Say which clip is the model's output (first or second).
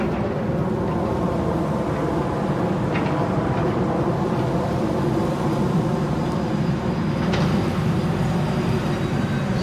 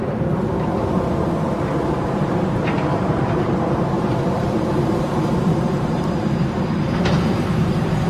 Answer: second